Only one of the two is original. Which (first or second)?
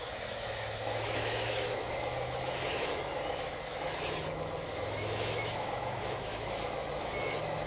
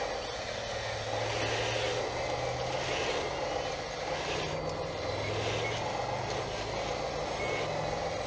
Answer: second